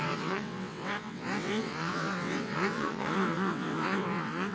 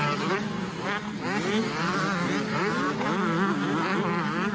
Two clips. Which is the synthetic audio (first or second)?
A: first